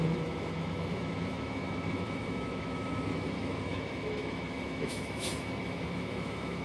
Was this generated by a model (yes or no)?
yes